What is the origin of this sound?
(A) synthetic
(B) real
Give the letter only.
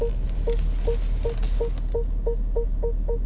B